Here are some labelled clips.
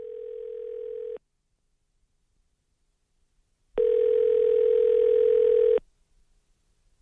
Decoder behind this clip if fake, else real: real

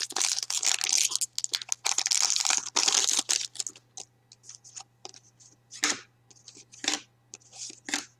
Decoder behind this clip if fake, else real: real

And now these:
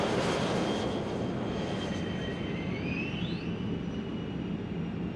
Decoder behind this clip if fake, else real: real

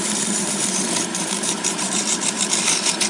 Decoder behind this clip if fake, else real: fake, vocoder, BigVGAN v2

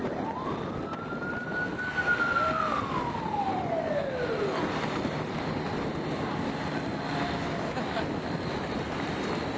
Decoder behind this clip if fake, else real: real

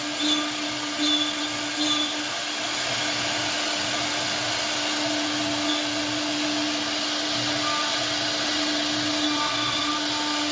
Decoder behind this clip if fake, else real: real